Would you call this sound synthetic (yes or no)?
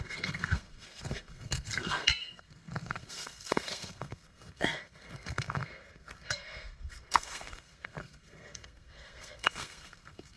yes